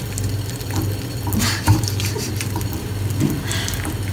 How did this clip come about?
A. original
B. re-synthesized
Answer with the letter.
A